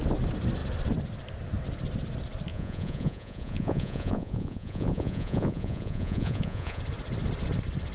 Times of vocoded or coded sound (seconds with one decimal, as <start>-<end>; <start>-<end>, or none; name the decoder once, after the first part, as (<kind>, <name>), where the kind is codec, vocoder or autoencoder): 2.5-6.8 (vocoder, Vocos)